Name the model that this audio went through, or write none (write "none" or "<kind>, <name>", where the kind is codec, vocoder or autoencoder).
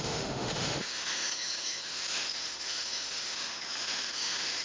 autoencoder, DAC-VAE